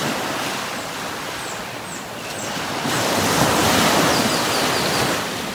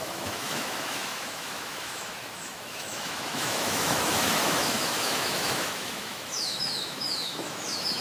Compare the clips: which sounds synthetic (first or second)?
second